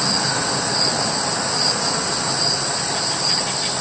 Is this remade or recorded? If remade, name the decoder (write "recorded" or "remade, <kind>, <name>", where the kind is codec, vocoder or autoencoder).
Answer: recorded